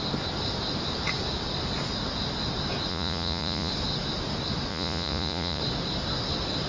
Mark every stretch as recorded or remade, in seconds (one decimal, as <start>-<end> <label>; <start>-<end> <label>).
0.0-2.9 recorded; 2.9-3.7 remade; 3.7-4.7 recorded; 4.7-5.6 remade; 5.6-6.7 recorded

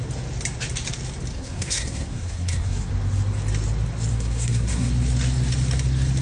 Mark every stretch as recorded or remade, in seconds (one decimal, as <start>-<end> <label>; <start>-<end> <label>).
0.0-1.3 recorded; 1.3-2.9 remade; 2.9-4.1 recorded; 4.1-4.9 remade; 4.9-6.2 recorded

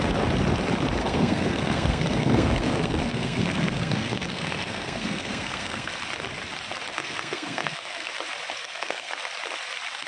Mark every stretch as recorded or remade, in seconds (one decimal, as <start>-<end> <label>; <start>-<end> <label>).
0.0-1.0 recorded; 1.0-5.9 remade; 5.9-6.9 recorded; 6.9-8.1 remade; 8.1-8.6 recorded; 8.6-9.1 remade; 9.1-10.1 recorded

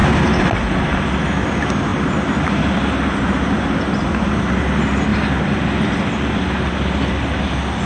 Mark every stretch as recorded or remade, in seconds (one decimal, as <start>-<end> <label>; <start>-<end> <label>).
0.0-7.9 recorded

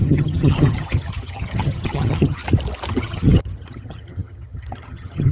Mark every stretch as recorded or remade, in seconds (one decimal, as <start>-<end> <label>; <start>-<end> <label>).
0.0-2.4 remade; 2.4-2.9 recorded; 2.9-5.3 remade